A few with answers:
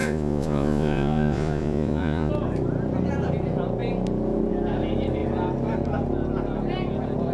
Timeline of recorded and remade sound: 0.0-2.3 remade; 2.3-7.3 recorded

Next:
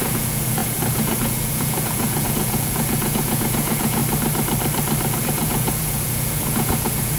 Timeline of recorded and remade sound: 0.0-4.0 remade; 4.0-5.2 recorded; 5.2-7.2 remade

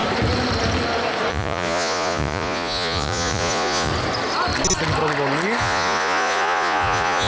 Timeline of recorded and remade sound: 0.0-1.3 recorded; 1.3-3.9 remade; 3.9-5.6 recorded; 5.6-7.3 remade

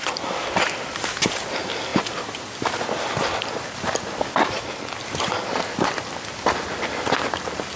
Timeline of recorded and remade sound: 0.0-7.8 recorded

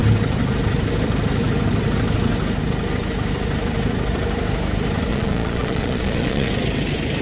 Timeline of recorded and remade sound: 0.0-5.1 recorded; 5.1-6.5 remade; 6.5-7.2 recorded